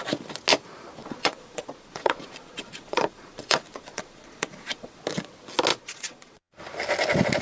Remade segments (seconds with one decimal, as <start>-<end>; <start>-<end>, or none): 1.0-5.0; 5.7-6.6